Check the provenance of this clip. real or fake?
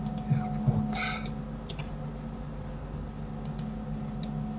real